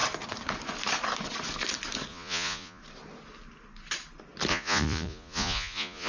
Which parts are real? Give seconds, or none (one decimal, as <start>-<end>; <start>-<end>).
0.0-2.1; 2.8-4.5